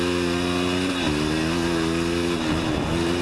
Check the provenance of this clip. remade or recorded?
recorded